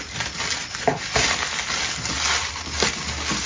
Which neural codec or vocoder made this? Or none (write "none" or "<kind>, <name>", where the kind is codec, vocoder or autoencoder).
none